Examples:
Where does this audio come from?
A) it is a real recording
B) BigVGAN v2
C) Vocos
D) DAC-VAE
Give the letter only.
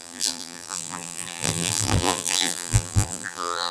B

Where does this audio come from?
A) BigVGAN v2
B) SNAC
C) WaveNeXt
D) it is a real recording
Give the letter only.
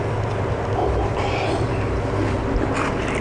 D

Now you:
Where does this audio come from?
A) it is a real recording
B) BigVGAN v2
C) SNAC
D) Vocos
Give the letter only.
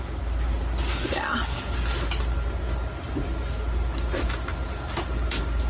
A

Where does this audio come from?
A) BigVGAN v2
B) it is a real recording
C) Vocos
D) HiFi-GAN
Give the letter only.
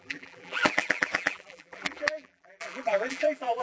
A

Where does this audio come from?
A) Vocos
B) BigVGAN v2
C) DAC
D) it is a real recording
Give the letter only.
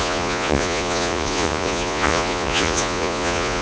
A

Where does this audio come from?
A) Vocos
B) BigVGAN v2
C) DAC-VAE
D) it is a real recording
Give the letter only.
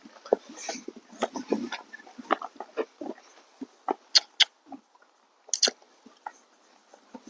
D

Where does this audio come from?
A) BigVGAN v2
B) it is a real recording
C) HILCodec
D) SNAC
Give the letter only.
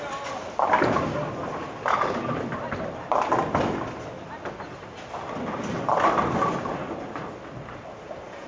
B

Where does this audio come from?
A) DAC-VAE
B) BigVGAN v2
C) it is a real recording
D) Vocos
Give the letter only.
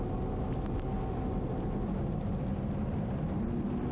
C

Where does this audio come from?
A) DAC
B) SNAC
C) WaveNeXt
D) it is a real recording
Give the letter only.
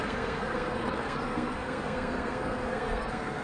B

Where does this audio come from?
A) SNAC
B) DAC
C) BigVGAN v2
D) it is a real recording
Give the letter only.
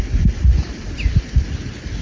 D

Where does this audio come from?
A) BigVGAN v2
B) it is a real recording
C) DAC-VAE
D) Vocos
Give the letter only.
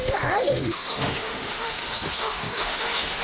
C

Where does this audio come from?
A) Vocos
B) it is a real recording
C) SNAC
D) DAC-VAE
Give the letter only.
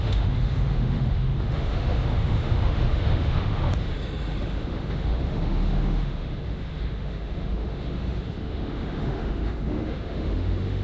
D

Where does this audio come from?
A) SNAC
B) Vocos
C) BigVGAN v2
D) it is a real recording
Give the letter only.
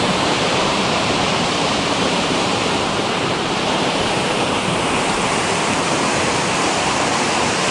C